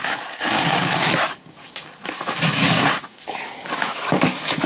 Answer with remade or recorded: remade